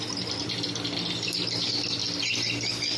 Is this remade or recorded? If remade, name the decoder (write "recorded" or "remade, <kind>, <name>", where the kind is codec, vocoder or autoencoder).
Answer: recorded